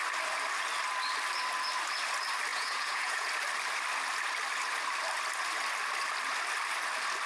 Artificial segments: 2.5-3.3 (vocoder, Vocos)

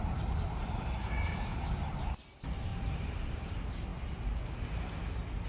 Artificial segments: 2.7-3.5 (vocoder, BigVGAN v2)

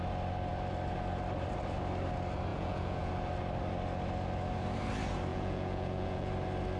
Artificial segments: 2.5-3.1 (vocoder, Vocos); 5.3-6.3

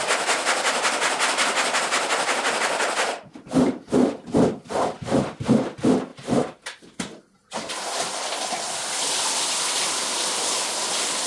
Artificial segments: none